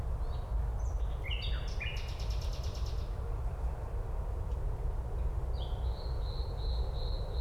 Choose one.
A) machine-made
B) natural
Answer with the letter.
B